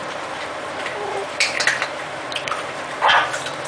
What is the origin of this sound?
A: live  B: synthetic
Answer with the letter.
B